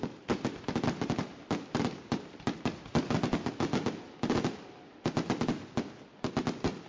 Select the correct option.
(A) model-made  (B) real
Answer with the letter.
B